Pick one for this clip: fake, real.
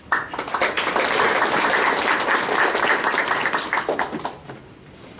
real